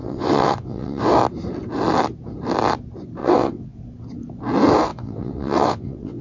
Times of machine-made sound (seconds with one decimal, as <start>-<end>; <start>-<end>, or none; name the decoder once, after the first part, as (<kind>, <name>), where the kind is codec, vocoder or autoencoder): 0.0-1.0 (vocoder, WaveNeXt); 3.2-3.8; 4.9-6.2